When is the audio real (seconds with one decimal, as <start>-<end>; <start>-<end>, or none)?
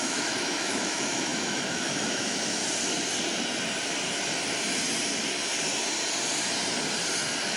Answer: 2.6-7.6